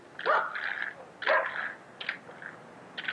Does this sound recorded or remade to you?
recorded